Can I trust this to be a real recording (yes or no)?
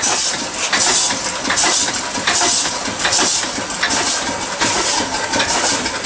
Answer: yes